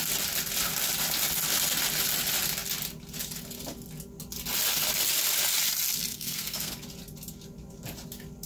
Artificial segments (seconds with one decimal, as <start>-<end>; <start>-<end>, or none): 6.1-6.7